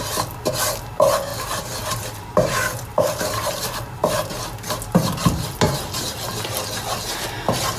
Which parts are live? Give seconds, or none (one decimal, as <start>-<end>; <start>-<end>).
0.0-1.3; 4.7-7.8